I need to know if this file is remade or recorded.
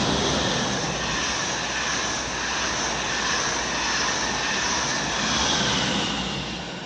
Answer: recorded